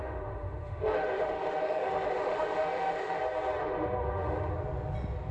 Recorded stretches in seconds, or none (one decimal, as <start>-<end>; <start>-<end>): 3.2-3.6; 4.5-5.3